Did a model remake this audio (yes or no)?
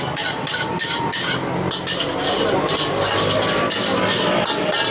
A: no